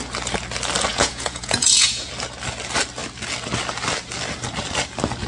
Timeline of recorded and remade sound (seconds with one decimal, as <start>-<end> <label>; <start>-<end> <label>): 0.0-0.9 recorded; 0.9-2.1 remade; 2.1-5.3 recorded